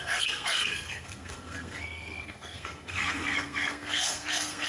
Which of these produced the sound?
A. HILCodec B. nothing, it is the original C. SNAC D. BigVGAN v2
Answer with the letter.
C